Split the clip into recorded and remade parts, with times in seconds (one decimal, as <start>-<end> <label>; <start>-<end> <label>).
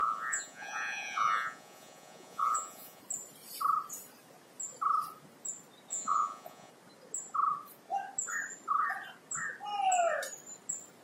0.0-3.0 remade; 3.0-5.9 recorded; 5.9-6.7 remade; 6.7-11.0 recorded